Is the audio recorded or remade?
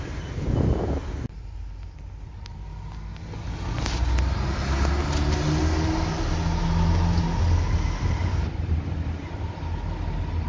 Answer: recorded